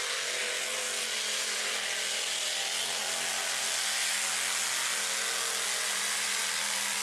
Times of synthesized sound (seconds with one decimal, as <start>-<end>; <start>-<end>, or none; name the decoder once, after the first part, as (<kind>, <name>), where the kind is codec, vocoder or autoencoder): none